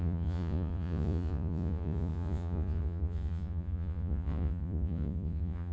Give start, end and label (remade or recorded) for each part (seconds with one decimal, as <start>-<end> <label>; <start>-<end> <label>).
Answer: 0.0-5.7 remade